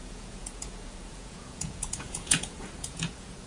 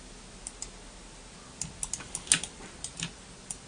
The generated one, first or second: first